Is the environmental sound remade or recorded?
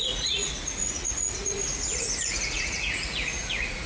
remade